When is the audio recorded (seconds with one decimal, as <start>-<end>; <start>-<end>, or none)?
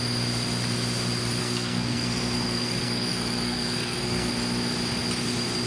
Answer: 0.0-1.4; 4.3-5.7